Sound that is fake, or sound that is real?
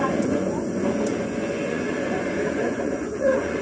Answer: fake